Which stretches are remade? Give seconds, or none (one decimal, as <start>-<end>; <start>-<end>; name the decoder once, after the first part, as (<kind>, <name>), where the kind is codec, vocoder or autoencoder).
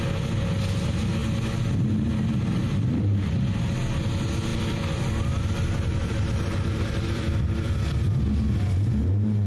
2.6-3.2 (vocoder, BigVGAN v2); 4.5-8.5